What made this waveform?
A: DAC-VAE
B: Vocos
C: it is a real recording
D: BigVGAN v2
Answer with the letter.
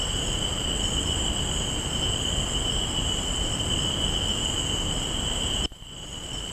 C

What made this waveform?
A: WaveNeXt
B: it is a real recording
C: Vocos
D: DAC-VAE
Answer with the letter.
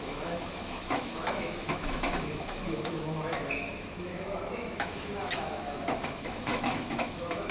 D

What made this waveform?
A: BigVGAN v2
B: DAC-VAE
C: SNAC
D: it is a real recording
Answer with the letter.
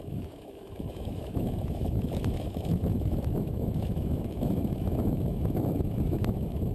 B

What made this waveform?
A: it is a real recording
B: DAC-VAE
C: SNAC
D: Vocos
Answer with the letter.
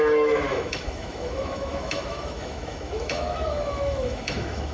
B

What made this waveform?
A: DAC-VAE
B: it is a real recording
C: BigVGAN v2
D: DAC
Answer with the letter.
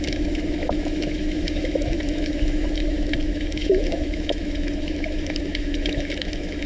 A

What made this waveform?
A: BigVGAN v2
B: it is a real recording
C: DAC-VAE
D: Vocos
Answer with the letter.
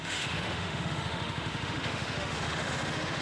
C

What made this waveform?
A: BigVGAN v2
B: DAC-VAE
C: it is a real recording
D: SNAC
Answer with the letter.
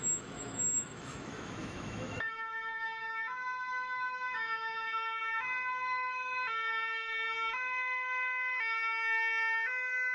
B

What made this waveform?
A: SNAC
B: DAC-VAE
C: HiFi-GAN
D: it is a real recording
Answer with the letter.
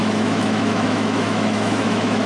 B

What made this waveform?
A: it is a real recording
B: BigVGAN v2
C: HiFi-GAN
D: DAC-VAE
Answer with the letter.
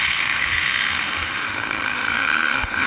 D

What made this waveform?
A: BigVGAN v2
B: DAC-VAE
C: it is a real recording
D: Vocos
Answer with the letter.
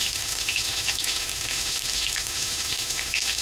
B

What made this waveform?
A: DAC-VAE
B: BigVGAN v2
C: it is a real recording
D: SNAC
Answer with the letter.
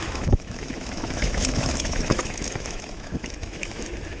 A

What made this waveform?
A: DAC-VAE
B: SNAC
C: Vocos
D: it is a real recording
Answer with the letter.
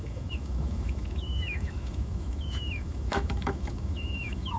A